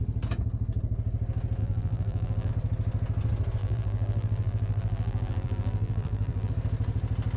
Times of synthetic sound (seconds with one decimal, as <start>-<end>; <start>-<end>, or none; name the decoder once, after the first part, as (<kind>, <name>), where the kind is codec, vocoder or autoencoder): 1.6-2.5 (vocoder, BigVGAN v2); 3.6-6.5